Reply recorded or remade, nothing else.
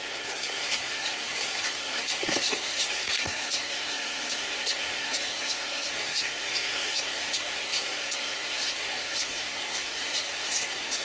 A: remade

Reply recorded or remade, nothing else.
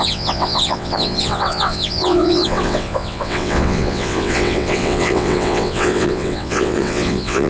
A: remade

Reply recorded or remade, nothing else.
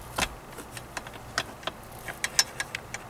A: recorded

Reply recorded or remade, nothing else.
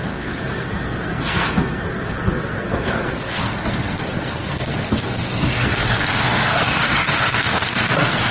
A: remade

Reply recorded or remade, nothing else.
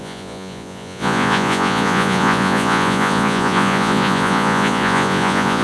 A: remade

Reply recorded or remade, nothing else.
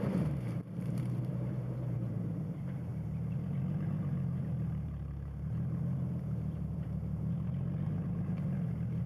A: remade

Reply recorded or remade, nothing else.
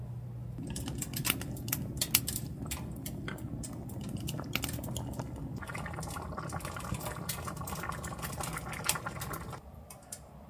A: recorded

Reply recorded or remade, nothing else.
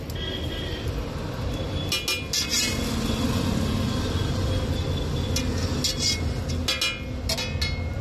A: recorded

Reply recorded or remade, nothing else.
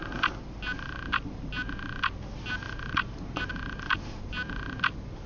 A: recorded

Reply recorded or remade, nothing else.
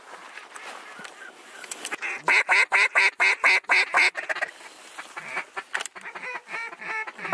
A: recorded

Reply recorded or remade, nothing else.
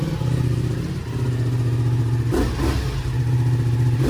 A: recorded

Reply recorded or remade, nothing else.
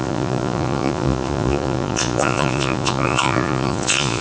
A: remade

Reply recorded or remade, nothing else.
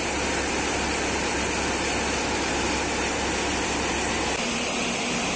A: recorded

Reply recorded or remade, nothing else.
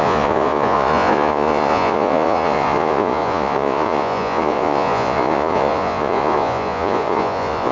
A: remade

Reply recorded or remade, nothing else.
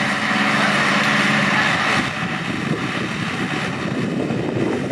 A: recorded